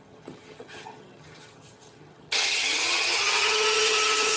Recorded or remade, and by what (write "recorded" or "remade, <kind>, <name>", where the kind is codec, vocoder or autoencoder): remade, vocoder, HiFi-GAN